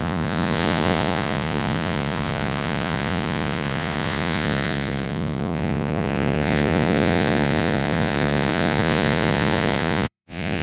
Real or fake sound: fake